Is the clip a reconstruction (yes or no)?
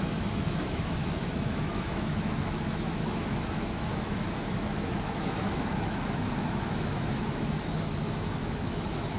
yes